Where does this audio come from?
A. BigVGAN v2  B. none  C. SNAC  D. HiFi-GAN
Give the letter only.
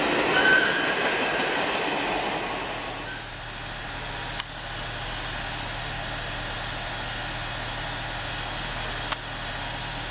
B